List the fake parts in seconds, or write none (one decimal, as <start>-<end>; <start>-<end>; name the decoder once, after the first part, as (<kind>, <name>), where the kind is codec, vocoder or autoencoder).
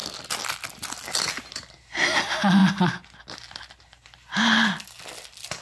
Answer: none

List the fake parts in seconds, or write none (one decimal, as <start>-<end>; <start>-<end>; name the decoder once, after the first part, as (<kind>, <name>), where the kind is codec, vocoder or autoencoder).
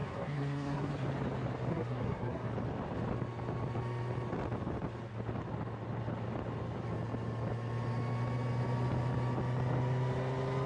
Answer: 0.0-0.9 (codec, SNAC); 1.7-2.5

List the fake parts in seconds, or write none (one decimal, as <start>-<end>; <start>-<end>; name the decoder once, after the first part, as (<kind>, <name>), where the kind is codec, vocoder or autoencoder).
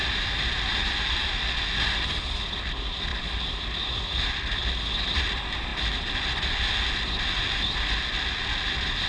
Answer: none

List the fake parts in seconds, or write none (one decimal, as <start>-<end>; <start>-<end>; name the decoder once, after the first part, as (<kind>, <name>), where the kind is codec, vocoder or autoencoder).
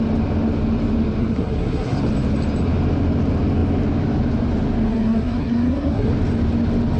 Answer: 1.2-2.0 (codec, SNAC); 4.9-6.1